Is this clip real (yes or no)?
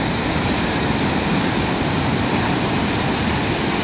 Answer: yes